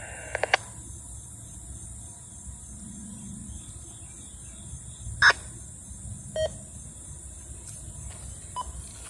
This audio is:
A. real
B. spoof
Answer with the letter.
A